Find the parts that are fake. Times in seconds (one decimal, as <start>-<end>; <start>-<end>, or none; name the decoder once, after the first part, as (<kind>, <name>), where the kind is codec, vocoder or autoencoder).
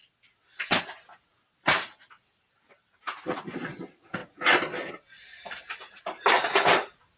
0.8-7.2 (vocoder, BigVGAN v2)